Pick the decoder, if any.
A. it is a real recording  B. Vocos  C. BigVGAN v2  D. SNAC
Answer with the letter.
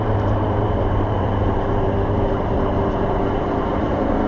C